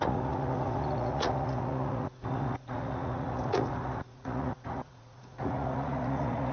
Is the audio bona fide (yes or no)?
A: no